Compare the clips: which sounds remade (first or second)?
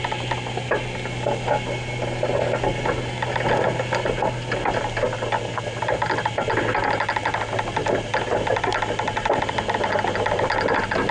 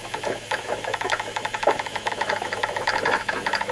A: second